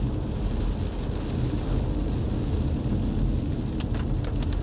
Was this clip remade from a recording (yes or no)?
no